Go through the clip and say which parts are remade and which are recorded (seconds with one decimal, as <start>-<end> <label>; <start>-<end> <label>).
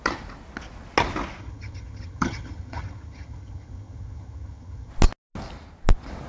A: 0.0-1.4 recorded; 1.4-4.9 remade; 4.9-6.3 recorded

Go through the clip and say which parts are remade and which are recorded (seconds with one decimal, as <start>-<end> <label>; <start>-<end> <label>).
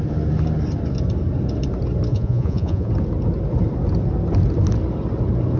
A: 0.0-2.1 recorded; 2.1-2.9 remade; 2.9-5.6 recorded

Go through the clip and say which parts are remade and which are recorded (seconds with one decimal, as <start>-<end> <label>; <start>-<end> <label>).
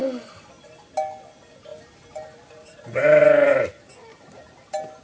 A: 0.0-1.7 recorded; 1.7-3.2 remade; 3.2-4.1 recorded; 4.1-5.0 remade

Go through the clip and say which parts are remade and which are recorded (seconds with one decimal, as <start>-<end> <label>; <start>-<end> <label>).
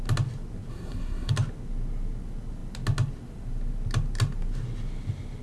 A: 0.0-0.7 recorded; 0.7-1.3 remade; 1.3-5.4 recorded